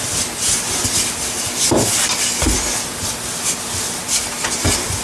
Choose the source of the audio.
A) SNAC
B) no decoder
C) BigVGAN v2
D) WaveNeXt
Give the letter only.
B